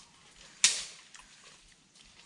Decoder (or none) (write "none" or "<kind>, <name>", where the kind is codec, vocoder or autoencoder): none